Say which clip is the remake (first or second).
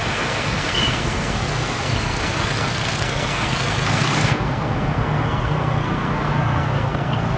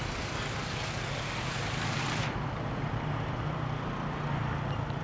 first